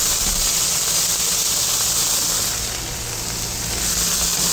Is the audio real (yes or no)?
yes